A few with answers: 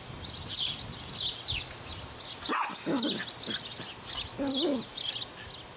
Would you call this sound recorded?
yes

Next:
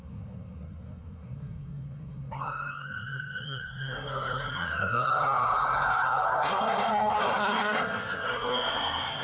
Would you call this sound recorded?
no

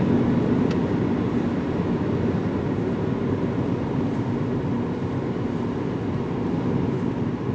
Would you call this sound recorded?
yes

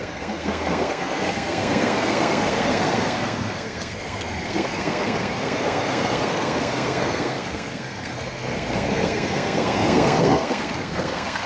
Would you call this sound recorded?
no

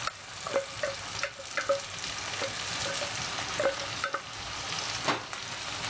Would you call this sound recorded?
yes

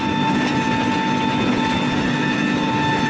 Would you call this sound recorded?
yes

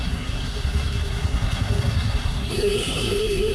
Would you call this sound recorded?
no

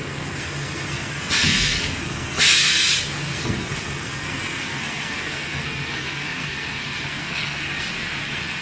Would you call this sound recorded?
no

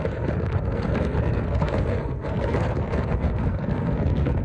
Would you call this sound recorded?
no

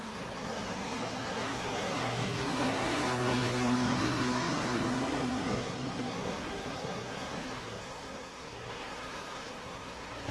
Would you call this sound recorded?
no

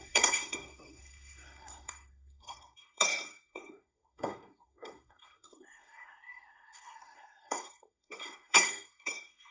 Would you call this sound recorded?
no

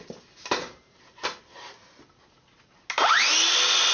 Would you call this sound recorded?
yes